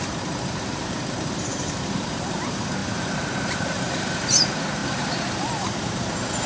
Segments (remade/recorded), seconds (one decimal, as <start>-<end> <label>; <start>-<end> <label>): 0.0-6.5 remade